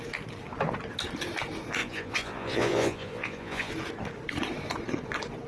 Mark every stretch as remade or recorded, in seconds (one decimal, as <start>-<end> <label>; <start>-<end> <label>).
0.0-1.8 recorded; 1.8-3.7 remade; 3.7-5.5 recorded